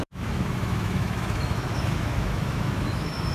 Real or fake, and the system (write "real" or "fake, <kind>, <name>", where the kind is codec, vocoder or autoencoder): fake, autoencoder, DAC-VAE